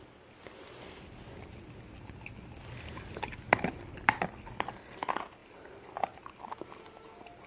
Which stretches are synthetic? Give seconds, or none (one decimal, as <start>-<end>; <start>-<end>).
none